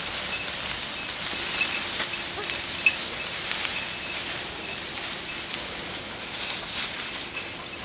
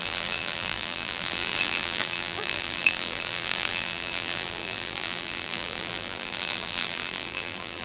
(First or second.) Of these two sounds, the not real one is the second